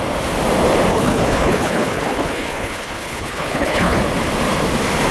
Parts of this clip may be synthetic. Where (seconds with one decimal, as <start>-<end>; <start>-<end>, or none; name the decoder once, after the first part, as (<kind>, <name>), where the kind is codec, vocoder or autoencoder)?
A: 0.9-4.0 (codec, HILCodec)